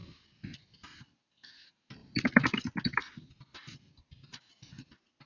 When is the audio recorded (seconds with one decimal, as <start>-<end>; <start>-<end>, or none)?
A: 0.0-5.3